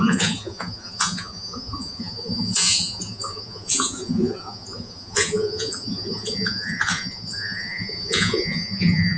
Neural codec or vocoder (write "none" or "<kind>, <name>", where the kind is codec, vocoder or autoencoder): vocoder, Vocos